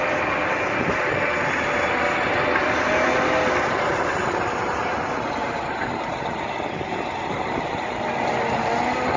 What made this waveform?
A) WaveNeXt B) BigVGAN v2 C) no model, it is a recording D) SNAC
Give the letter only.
C